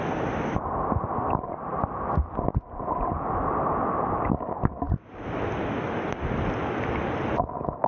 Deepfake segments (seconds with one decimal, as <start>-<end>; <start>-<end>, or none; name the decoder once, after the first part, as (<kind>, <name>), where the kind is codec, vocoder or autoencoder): none